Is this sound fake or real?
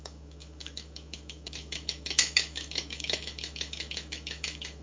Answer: fake